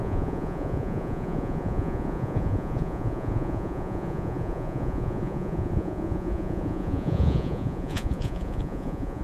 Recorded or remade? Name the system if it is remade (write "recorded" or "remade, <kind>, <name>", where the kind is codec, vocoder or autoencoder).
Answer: remade, vocoder, Vocos